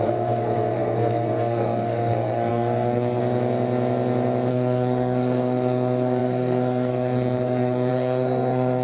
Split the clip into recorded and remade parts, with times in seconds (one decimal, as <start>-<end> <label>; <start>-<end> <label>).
0.0-3.2 remade; 3.2-4.5 recorded; 4.5-8.8 remade